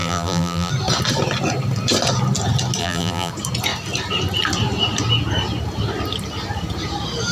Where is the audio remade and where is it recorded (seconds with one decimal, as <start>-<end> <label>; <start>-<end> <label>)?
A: 0.0-0.7 remade; 0.7-2.8 recorded; 2.8-3.3 remade; 3.3-7.3 recorded